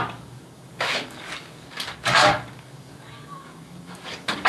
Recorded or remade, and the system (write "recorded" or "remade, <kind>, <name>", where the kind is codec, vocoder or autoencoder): remade, codec, DAC